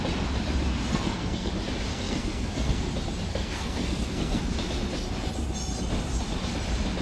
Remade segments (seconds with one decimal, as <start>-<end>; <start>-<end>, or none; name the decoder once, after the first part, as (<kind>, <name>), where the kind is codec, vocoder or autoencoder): 0.9-1.5 (codec, SNAC); 1.9-2.8; 3.3-4.4